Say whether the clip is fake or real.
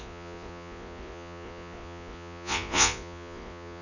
fake